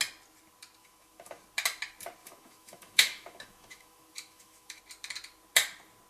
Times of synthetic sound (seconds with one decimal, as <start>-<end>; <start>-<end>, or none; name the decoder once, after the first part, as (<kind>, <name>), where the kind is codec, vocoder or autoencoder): 0.8-1.4 (autoencoder, DAC-VAE); 2.2-4.8